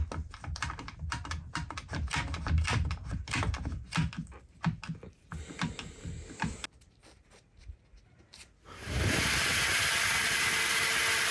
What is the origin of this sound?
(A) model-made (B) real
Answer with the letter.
B